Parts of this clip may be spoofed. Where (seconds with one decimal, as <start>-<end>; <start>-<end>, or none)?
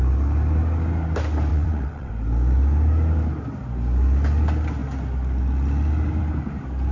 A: 1.5-2.1